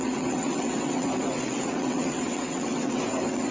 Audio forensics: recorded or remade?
remade